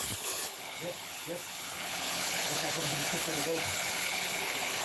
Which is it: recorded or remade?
remade